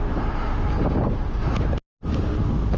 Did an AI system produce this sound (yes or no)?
no